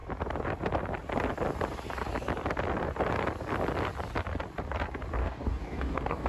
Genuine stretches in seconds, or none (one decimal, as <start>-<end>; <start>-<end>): 0.0-5.2